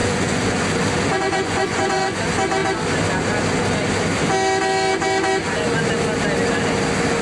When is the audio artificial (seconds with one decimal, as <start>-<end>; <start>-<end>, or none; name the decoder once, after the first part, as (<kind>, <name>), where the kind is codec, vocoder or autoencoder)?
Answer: 0.0-0.6 (vocoder, Vocos); 1.1-2.2